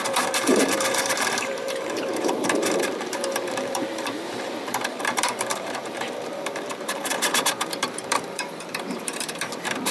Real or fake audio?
fake